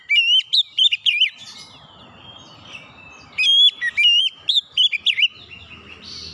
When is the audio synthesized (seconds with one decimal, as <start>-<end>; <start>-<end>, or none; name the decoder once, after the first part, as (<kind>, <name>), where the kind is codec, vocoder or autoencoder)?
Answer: none